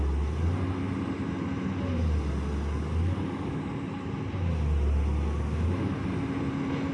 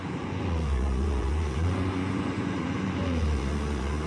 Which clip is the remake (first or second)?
second